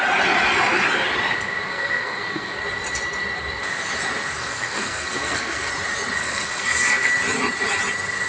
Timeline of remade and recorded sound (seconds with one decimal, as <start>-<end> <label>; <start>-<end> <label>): 0.0-1.7 recorded; 1.7-2.6 remade; 2.6-4.4 recorded; 4.4-5.7 remade; 5.7-6.2 recorded; 6.2-7.1 remade; 7.1-8.3 recorded